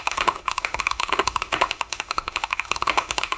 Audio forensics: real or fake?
fake